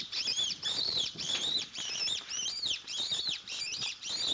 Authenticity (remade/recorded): remade